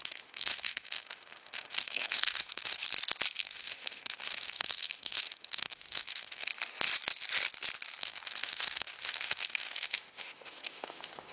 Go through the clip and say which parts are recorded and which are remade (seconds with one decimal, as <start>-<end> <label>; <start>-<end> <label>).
0.0-2.8 remade; 2.8-3.4 recorded; 3.4-6.5 remade; 6.5-8.0 recorded; 8.0-11.3 remade